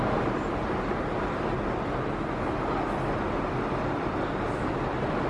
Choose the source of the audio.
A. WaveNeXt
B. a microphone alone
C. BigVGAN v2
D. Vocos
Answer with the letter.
B